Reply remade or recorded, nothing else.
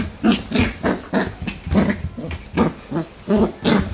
recorded